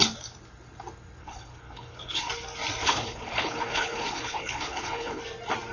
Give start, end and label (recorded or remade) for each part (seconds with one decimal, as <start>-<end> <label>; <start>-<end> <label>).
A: 0.0-1.2 recorded; 1.2-2.3 remade; 2.3-2.8 recorded; 2.8-5.2 remade; 5.2-5.7 recorded